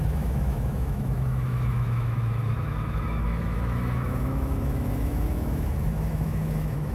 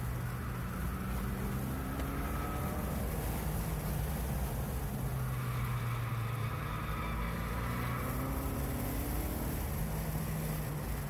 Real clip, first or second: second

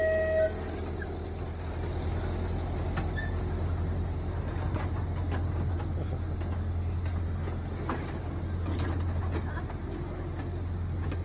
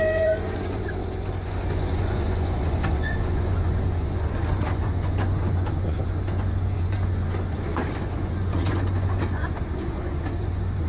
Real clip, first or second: first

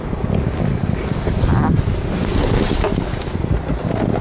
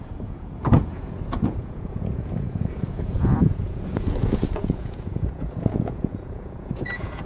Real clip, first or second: first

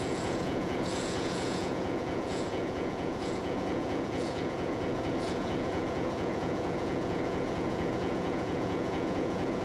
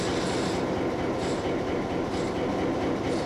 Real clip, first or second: second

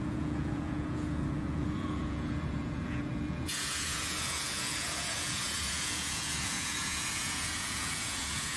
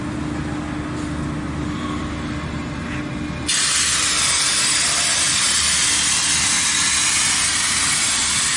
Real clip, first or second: second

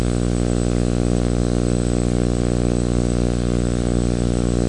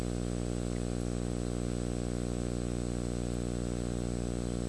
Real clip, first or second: second